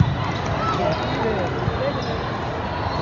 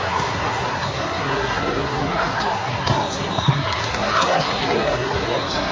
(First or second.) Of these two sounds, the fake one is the second